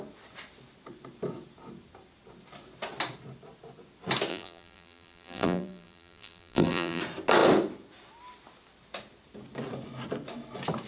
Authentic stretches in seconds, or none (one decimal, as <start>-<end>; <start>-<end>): 0.0-4.3; 7.0-10.9